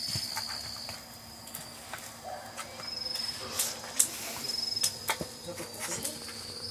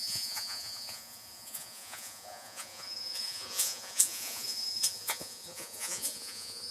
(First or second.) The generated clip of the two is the second